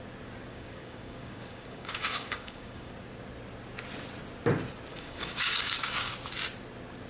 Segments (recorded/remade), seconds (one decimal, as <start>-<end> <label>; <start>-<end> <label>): 0.0-0.5 recorded; 0.5-2.9 remade; 2.9-4.9 recorded; 4.9-6.1 remade; 6.1-7.1 recorded

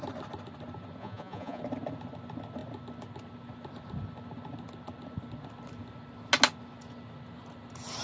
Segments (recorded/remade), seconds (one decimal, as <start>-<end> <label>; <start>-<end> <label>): 0.0-1.0 recorded; 1.0-1.6 remade; 1.6-8.0 recorded

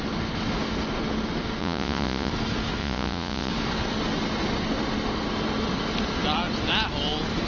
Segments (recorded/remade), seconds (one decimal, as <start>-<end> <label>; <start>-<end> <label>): 0.0-1.6 recorded; 1.6-2.3 remade; 2.3-2.8 recorded; 2.8-3.5 remade; 3.5-7.5 recorded